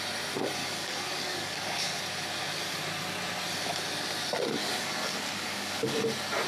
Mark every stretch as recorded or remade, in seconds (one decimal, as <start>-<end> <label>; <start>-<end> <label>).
0.0-0.6 recorded; 0.6-2.0 remade; 2.0-4.6 recorded; 4.6-6.0 remade; 6.0-6.5 recorded